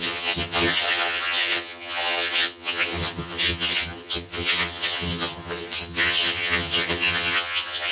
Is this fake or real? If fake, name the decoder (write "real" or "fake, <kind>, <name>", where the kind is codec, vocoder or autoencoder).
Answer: fake, vocoder, HiFi-GAN